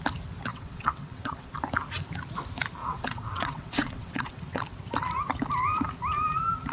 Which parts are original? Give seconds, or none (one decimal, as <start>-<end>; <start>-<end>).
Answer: 0.0-0.5; 1.5-2.8; 4.6-6.7